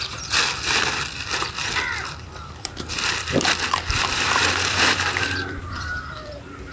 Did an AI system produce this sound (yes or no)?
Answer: yes